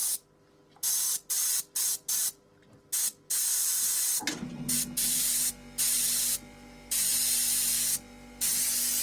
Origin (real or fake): real